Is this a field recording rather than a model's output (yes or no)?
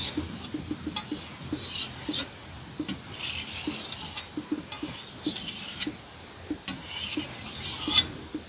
yes